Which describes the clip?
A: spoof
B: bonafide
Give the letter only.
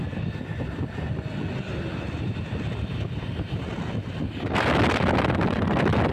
B